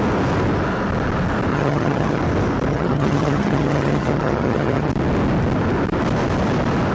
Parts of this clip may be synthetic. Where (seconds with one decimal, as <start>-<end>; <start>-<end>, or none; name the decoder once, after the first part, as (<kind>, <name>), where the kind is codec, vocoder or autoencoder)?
1.5-2.2 (vocoder, HiFi-GAN); 2.7-4.9